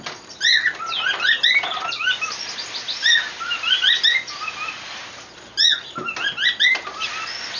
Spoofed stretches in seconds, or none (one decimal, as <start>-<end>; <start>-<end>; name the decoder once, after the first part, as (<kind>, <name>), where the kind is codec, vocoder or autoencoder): none

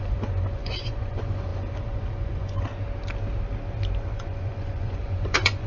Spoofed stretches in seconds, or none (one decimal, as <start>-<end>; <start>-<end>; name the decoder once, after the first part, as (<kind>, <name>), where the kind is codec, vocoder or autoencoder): 0.0-2.7 (vocoder, Vocos); 4.0-5.7

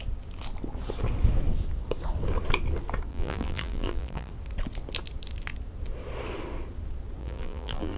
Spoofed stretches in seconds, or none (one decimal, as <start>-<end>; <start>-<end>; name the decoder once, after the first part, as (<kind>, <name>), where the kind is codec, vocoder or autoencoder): 3.1-4.3 (vocoder, BigVGAN v2); 7.2-8.0

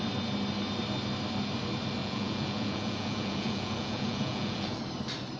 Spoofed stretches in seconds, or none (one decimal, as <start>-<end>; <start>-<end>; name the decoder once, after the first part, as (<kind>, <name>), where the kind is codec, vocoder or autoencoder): 2.0-4.8 (vocoder, Vocos)

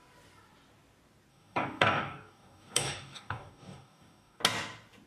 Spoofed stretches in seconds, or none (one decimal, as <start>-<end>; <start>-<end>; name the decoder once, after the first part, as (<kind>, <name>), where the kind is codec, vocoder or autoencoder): 1.3-4.4 (codec, DAC)

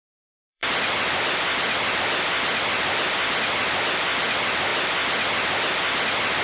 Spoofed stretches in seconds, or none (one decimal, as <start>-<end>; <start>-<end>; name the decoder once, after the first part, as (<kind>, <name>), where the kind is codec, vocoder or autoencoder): 0.0-3.6 (vocoder, BigVGAN v2); 4.2-4.7

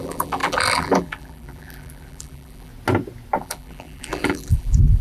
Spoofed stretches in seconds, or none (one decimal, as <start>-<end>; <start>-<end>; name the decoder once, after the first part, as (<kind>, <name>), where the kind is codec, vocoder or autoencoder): 0.0-2.7 (vocoder, BigVGAN v2); 3.4-5.0

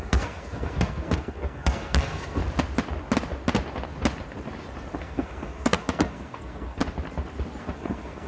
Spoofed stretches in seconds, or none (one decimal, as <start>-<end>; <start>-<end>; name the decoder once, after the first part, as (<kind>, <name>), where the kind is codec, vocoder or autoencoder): 0.0-2.4 (codec, SNAC); 5.0-6.8; 7.6-8.3